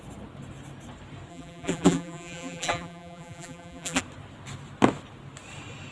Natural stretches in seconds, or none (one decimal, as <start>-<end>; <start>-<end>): 0.0-1.3; 4.0-5.9